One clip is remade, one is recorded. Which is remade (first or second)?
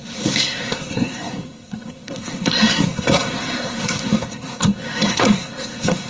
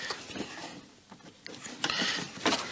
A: first